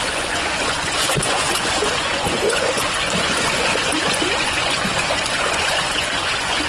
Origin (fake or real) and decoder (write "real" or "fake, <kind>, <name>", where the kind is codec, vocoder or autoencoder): fake, vocoder, Vocos